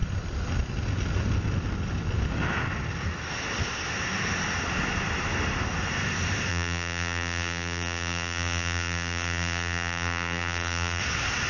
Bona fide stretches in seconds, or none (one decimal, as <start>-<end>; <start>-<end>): 0.0-6.5; 11.0-11.5